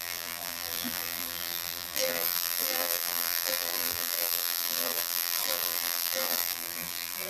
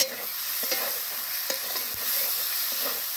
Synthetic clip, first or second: first